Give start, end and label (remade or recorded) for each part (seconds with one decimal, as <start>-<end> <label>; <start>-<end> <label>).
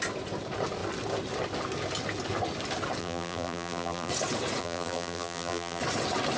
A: 0.0-3.0 recorded; 3.0-4.1 remade; 4.1-4.6 recorded; 4.6-5.8 remade; 5.8-6.4 recorded